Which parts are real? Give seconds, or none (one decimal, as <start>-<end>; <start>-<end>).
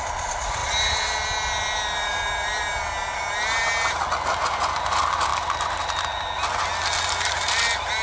0.0-8.0